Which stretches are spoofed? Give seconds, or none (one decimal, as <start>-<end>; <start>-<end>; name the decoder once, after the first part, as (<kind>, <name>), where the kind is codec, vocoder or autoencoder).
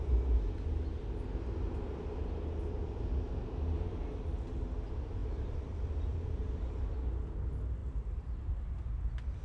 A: 5.2-7.0 (vocoder, BigVGAN v2); 7.8-8.6